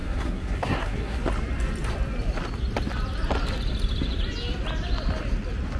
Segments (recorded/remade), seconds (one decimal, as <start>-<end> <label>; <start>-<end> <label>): 0.0-1.2 remade; 1.2-5.8 recorded